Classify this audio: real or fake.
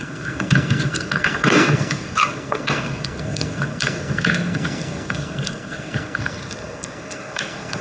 fake